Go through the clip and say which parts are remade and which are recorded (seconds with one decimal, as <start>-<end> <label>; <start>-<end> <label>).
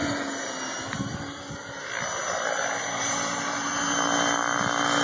0.0-5.0 recorded